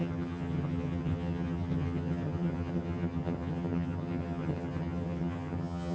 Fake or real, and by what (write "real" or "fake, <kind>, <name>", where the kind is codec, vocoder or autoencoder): fake, vocoder, HiFi-GAN